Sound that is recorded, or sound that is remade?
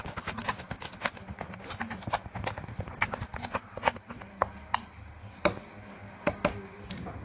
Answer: recorded